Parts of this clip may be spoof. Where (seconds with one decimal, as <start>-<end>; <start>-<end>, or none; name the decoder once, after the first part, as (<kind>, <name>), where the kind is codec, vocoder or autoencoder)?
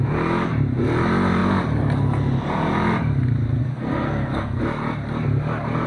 3.6-4.6 (codec, SNAC)